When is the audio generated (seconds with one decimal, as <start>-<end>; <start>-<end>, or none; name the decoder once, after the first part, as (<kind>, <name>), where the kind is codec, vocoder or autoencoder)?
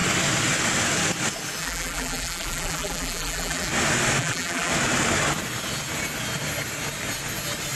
1.6-3.7 (vocoder, BigVGAN v2); 4.2-4.7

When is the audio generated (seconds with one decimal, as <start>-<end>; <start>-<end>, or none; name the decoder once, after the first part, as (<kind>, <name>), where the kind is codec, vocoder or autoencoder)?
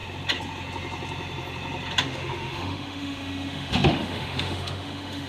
2.0-5.3 (autoencoder, DAC-VAE)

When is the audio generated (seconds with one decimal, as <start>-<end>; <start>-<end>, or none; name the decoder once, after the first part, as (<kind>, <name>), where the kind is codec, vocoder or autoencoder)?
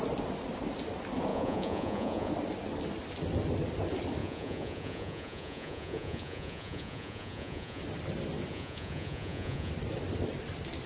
1.3-2.3 (vocoder, Vocos); 4.2-7.8; 8.5-9.7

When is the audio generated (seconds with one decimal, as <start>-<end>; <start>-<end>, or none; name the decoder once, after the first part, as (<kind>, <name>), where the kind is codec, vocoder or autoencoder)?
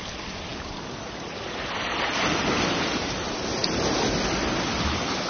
none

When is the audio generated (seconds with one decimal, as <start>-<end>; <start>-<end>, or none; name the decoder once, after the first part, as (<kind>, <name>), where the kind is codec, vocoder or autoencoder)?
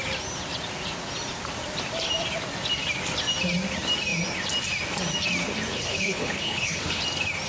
5.7-7.0 (codec, HILCodec)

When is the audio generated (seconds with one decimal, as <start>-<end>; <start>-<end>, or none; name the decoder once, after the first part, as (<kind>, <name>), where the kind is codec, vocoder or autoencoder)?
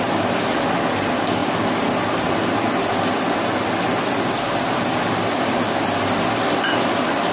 none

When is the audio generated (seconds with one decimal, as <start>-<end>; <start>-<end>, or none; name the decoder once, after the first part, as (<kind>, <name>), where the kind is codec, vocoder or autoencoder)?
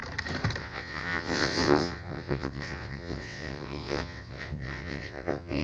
0.6-5.6 (vocoder, WaveNeXt)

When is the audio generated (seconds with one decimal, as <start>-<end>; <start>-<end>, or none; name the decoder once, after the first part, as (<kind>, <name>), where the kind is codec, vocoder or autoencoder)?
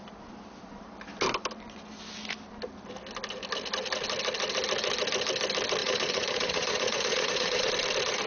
5.8-7.7 (vocoder, Vocos)